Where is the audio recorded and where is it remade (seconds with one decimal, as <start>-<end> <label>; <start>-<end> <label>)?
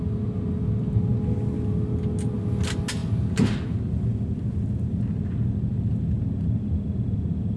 0.0-7.6 recorded